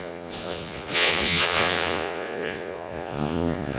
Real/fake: fake